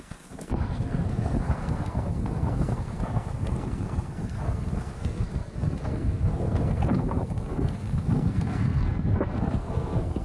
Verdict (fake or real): fake